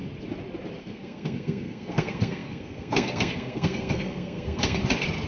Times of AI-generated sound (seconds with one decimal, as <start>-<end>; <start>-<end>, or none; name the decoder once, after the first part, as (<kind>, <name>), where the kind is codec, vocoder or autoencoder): 0.8-4.8 (codec, SNAC)